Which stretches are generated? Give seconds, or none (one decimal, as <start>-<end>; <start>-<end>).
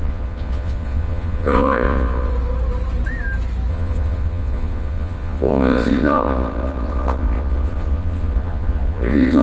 0.0-2.3; 3.7-9.4